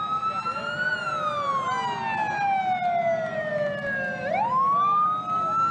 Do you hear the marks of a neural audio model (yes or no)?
no